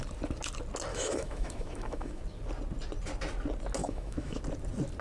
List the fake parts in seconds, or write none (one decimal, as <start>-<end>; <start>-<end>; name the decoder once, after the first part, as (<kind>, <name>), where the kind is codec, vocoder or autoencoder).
0.9-2.2 (autoencoder, DAC-VAE); 3.8-4.4